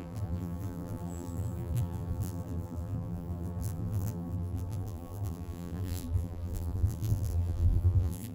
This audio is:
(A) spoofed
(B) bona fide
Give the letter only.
A